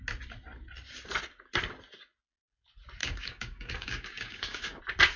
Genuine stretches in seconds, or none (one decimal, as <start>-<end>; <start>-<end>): 0.0-3.0; 4.8-5.2